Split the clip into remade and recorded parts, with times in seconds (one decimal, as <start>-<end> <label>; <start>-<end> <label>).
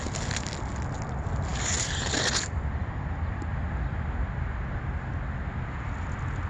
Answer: 0.0-6.5 recorded